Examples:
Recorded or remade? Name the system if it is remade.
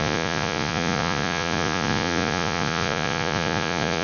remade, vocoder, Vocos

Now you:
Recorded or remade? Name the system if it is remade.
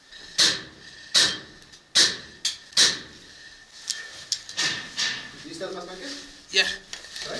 recorded